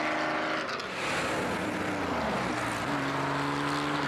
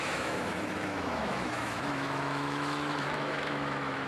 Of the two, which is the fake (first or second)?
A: second